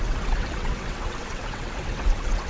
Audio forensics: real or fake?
fake